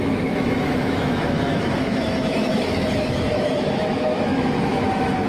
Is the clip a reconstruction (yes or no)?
yes